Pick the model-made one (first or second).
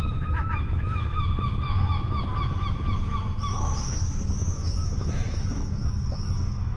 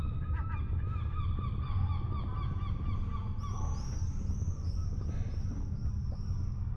first